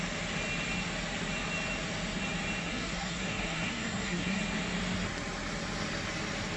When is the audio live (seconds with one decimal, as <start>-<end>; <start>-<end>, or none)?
0.0-2.6; 4.4-6.6